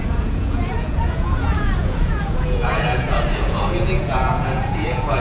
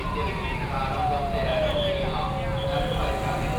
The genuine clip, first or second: second